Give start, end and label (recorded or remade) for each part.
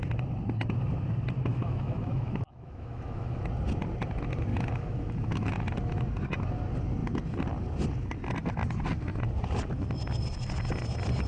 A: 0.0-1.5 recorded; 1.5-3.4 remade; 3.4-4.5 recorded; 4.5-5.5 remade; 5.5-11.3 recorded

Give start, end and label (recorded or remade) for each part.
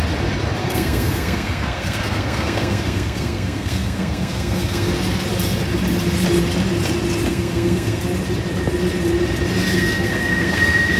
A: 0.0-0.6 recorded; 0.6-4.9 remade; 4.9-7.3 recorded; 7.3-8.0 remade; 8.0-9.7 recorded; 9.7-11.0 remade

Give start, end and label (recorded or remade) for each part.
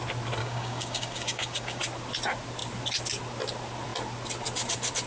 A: 0.0-0.4 recorded; 0.4-1.8 remade; 1.8-5.1 recorded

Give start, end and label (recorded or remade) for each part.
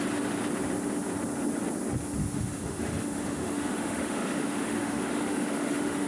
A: 0.0-2.2 recorded; 2.2-6.1 remade